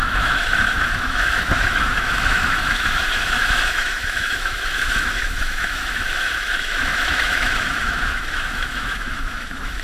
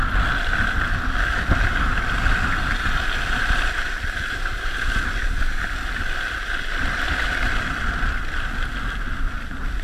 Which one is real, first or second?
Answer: second